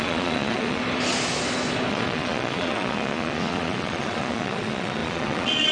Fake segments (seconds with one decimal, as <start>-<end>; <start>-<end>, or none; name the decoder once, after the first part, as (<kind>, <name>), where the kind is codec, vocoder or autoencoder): 0.0-0.8 (vocoder, Vocos); 1.9-5.7